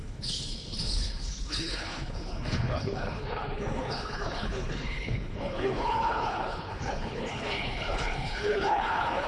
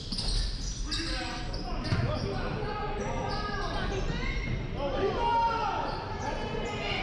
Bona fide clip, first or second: second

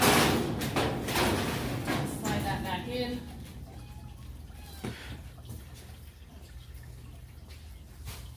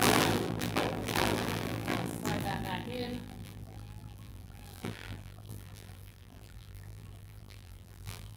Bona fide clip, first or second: first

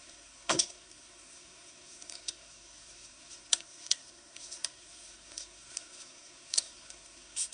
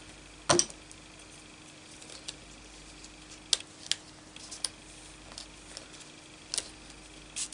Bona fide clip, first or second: second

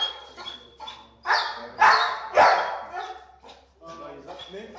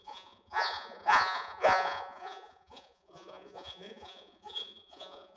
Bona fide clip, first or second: first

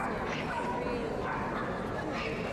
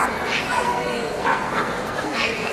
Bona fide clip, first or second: first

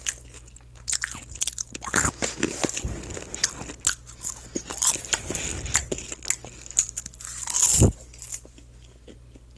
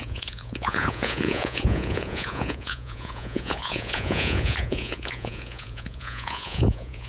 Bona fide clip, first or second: first